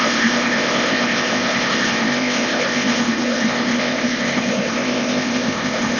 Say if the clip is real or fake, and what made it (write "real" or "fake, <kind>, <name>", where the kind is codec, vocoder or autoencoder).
fake, codec, ZipCodec